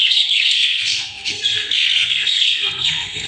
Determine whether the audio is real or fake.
fake